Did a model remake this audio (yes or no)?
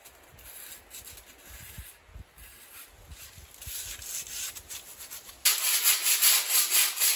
no